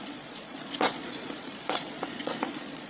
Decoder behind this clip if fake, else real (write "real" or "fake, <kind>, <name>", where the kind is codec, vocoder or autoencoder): fake, vocoder, Vocos